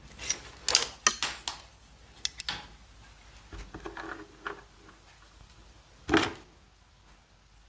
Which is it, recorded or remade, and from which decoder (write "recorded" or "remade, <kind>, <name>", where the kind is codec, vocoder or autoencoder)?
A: recorded